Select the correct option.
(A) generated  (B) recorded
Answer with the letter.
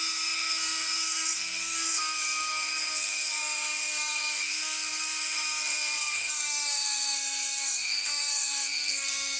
A